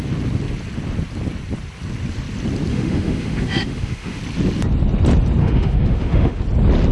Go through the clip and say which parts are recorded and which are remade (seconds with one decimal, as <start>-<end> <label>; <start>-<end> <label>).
0.0-2.7 recorded; 2.7-4.2 remade; 4.2-5.4 recorded; 5.4-6.4 remade; 6.4-6.9 recorded